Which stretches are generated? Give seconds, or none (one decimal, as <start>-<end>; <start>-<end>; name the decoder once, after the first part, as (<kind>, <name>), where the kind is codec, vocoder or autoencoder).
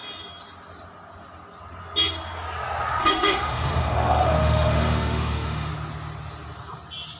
3.0-5.7 (autoencoder, DAC-VAE)